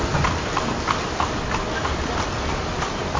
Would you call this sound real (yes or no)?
yes